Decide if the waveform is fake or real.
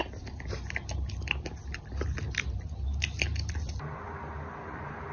real